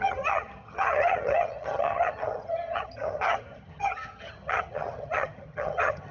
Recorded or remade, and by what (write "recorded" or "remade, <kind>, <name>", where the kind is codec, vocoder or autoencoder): remade, vocoder, HiFi-GAN